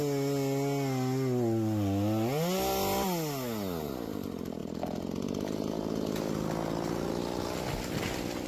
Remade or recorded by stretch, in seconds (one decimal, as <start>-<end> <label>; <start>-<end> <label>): 0.0-8.5 recorded